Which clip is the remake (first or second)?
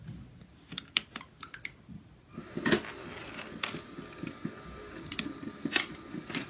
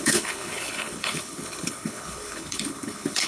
second